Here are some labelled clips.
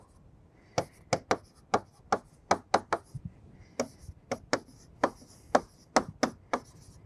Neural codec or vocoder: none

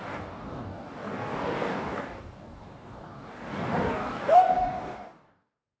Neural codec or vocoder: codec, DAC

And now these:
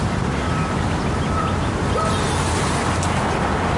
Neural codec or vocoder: none